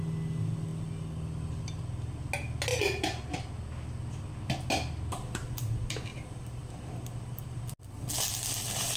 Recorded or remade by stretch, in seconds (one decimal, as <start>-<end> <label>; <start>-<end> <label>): 0.0-2.7 recorded; 2.7-3.3 remade; 3.3-6.1 recorded; 6.1-7.6 remade; 7.6-9.0 recorded